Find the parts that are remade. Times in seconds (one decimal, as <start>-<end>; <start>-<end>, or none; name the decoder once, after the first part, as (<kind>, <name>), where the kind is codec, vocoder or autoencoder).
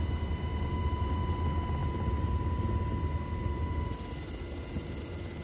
none